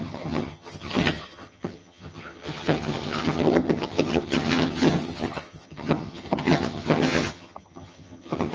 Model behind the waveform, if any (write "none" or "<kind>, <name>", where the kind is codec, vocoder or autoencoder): vocoder, HiFi-GAN